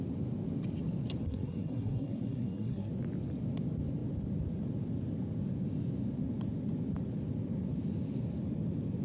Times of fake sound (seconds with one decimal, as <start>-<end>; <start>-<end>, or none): 1.2-2.9

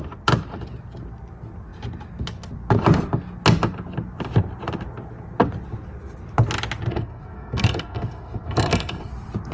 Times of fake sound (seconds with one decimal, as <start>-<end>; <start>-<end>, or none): 6.9-9.1

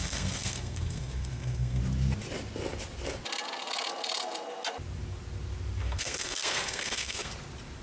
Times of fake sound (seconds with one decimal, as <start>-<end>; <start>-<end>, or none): 0.0-1.8; 5.8-7.3

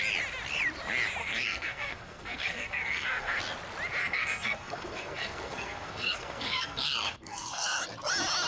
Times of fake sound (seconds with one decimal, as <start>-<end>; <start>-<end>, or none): 1.2-3.4; 4.0-7.8

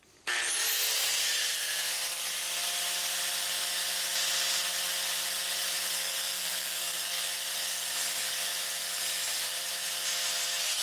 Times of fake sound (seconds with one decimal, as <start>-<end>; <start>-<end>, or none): 5.8-7.2

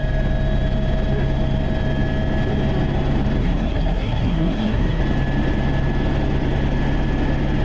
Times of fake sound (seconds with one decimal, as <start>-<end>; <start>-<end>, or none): 3.4-5.0

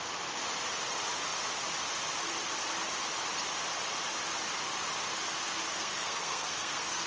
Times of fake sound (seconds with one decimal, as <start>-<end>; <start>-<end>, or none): 5.7-7.1

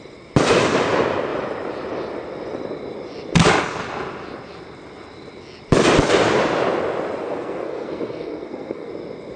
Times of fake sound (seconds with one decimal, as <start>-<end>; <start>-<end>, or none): 7.2-8.9